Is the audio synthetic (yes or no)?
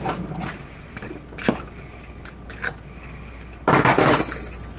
no